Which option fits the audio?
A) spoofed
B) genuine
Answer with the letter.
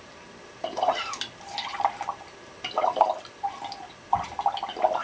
A